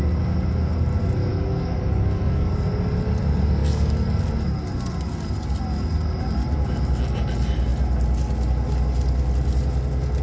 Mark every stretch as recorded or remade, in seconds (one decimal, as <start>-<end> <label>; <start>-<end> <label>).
0.0-1.3 recorded; 1.3-2.5 remade; 2.5-3.6 recorded; 3.6-4.2 remade; 4.2-10.2 recorded

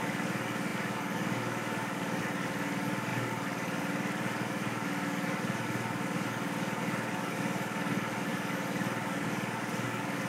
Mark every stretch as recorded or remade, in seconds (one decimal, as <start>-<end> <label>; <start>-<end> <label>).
0.0-10.3 remade

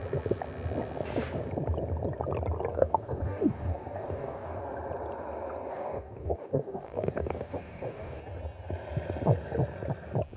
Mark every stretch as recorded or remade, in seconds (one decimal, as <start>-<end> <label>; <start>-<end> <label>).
0.0-2.7 recorded; 2.7-4.6 remade; 4.6-5.7 recorded; 5.7-8.2 remade; 8.2-10.4 recorded

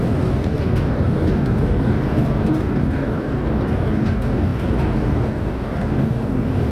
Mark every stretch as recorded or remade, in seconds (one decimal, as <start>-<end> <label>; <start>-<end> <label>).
0.0-6.7 remade

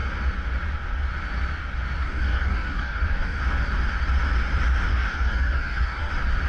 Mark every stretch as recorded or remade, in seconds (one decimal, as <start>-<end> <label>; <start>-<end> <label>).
0.0-2.0 recorded; 2.0-3.4 remade; 3.4-4.9 recorded; 4.9-6.1 remade; 6.1-6.5 recorded